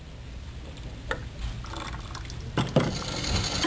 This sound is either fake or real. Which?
real